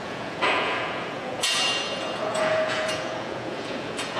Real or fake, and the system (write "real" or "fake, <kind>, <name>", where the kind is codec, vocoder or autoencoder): fake, vocoder, Vocos